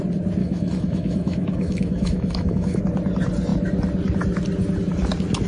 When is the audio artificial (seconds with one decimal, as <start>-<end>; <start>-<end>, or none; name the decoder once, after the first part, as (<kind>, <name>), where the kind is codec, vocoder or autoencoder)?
0.4-2.8 (autoencoder, DAC-VAE)